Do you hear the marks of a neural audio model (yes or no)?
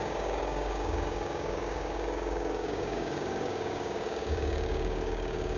yes